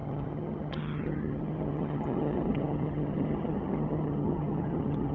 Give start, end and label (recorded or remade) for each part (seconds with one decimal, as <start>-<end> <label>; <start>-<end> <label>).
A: 0.0-5.1 remade